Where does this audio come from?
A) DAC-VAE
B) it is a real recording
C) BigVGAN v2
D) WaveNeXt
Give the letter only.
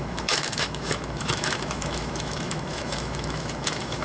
A